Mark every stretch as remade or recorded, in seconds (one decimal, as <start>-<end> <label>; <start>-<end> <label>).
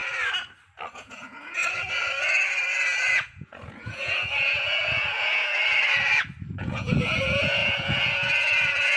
0.0-0.9 recorded; 0.9-1.6 remade; 1.6-3.1 recorded; 3.1-5.6 remade; 5.6-6.6 recorded; 6.6-9.0 remade